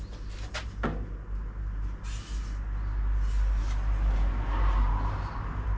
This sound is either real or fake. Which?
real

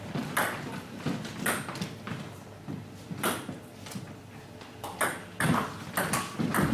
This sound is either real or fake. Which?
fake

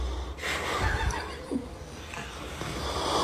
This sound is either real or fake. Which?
real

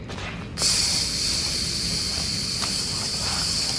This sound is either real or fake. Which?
real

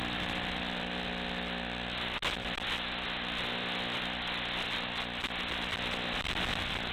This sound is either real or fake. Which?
real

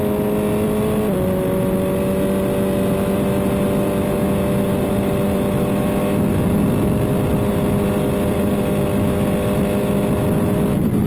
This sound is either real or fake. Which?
real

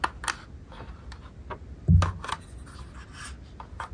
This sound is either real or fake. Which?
real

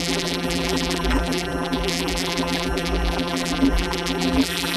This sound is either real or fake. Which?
fake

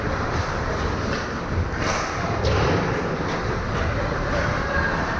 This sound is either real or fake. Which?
fake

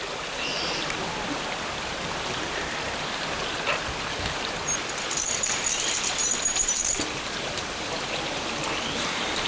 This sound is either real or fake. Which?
fake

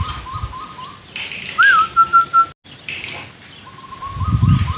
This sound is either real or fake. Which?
real